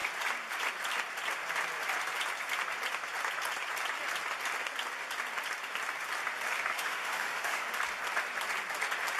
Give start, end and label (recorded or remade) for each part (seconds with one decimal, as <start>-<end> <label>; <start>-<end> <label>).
0.0-6.7 recorded; 6.7-7.6 remade; 7.6-9.2 recorded